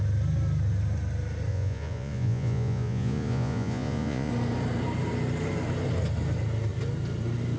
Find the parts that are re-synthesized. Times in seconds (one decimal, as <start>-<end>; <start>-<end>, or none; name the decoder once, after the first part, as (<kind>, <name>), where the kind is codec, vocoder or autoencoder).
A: 1.5-4.3 (vocoder, Vocos)

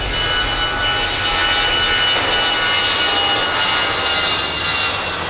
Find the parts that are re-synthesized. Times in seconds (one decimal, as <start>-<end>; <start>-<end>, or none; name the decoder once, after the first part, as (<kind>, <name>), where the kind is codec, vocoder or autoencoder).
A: none